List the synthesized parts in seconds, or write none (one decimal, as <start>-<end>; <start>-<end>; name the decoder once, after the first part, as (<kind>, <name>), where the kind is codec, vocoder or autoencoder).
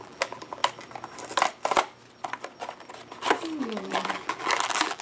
0.0-0.6 (vocoder, BigVGAN v2); 3.6-5.0